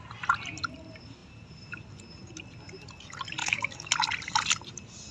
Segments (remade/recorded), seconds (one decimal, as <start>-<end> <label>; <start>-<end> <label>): 0.0-3.4 recorded; 3.4-3.9 remade; 3.9-5.1 recorded